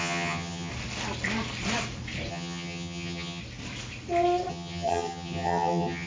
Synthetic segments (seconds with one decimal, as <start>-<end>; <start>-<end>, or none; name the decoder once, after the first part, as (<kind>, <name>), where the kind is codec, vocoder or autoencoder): 0.0-0.7 (vocoder, HiFi-GAN); 2.3-3.4; 4.5-6.1